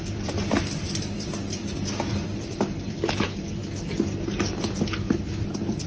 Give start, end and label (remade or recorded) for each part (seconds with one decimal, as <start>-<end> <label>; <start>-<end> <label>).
0.0-1.4 remade; 1.4-2.3 recorded; 2.3-3.6 remade; 3.6-4.5 recorded; 4.5-5.9 remade